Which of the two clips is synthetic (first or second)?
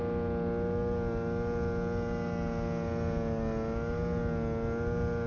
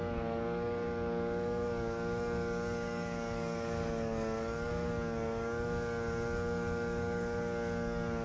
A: second